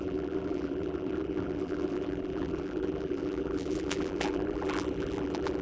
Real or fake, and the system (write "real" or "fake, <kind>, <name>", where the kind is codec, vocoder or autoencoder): fake, vocoder, BigVGAN v2